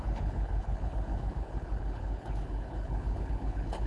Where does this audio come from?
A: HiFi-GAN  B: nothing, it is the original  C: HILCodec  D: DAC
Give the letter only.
C